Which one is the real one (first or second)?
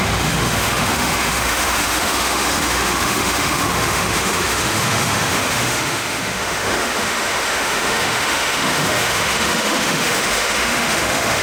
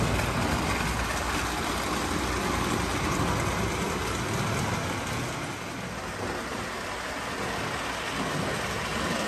second